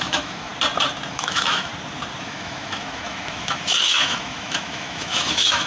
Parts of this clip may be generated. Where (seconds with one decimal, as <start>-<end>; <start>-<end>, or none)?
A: 0.0-0.5; 1.1-1.7; 2.2-5.7